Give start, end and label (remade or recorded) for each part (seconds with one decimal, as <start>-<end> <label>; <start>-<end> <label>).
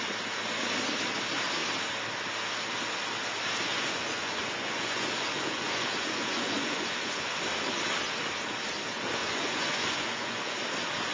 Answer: 0.0-3.7 recorded; 3.7-7.4 remade; 7.4-9.2 recorded; 9.2-10.6 remade; 10.6-11.1 recorded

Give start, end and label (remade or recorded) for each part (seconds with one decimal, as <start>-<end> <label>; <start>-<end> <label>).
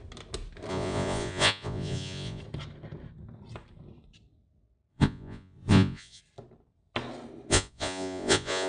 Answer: 0.0-0.7 recorded; 0.7-2.4 remade; 2.4-4.9 recorded; 4.9-6.2 remade; 6.2-7.5 recorded; 7.5-8.7 remade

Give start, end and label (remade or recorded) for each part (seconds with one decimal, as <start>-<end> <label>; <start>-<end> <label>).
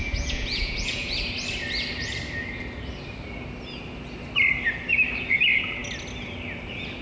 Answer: 0.0-1.1 remade; 1.1-7.0 recorded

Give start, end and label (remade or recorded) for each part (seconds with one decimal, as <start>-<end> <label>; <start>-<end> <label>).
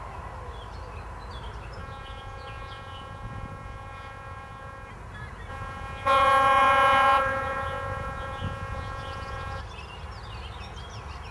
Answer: 0.0-1.8 recorded; 1.8-4.9 remade; 4.9-5.5 recorded; 5.5-9.6 remade; 9.6-11.3 recorded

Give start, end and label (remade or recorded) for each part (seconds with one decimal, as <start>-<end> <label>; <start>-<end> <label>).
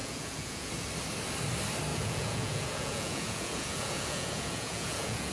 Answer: 0.0-0.7 remade; 0.7-1.9 recorded; 1.9-5.3 remade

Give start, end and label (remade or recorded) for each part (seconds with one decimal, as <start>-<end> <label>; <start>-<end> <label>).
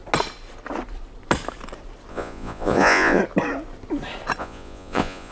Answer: 0.0-2.1 recorded; 2.1-3.2 remade; 3.2-4.4 recorded; 4.4-5.3 remade